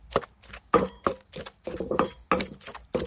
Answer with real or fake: real